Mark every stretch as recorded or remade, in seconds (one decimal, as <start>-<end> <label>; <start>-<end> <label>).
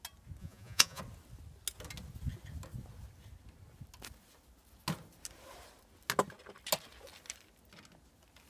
0.0-0.4 recorded; 0.4-1.0 remade; 1.0-8.5 recorded